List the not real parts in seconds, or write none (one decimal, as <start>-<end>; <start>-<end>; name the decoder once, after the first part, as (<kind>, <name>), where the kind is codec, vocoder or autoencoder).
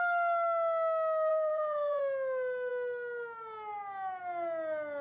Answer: 1.3-2.0 (vocoder, BigVGAN v2)